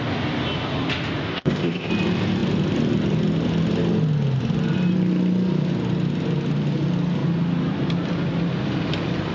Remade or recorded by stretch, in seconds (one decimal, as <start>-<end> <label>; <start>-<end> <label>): 0.0-1.3 recorded; 1.3-1.9 remade; 1.9-9.3 recorded